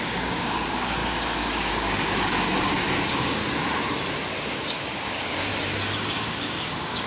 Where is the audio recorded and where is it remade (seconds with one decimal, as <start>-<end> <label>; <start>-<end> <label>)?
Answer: 0.0-3.4 remade; 3.4-4.4 recorded; 4.4-5.5 remade; 5.5-6.1 recorded; 6.1-7.1 remade